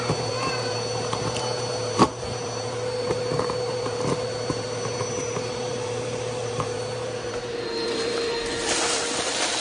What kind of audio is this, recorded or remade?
remade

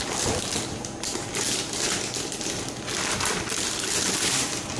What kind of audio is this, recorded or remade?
recorded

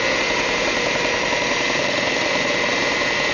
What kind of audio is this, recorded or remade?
recorded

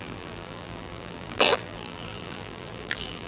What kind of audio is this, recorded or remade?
remade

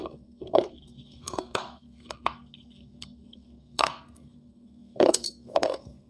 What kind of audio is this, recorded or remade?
remade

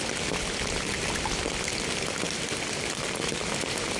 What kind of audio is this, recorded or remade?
recorded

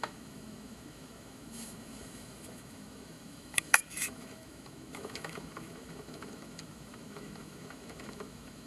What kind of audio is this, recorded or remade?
remade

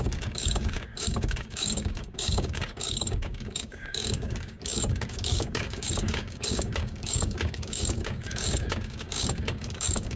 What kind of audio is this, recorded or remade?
remade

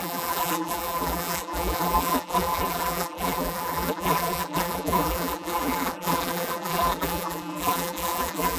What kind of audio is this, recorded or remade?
remade